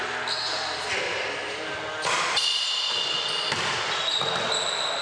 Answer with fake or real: real